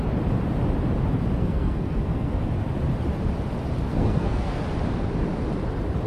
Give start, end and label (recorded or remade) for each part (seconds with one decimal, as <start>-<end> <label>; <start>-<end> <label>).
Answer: 0.0-1.4 recorded; 1.4-2.4 remade; 2.4-3.9 recorded; 3.9-4.6 remade; 4.6-6.1 recorded